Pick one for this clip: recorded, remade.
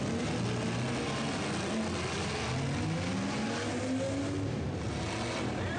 recorded